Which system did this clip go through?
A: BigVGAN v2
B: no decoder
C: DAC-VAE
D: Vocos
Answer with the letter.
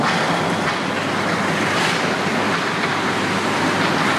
A